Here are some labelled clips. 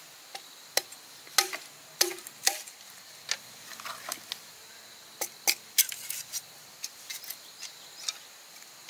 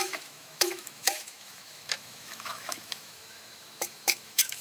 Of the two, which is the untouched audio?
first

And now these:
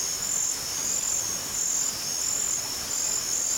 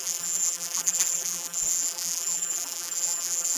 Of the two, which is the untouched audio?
first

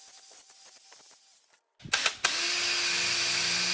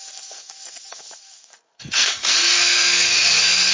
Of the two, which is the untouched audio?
first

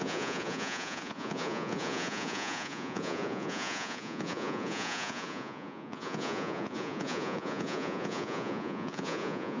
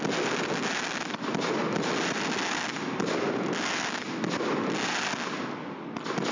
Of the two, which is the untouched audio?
second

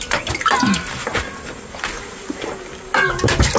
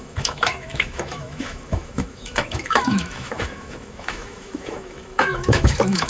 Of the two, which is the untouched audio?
first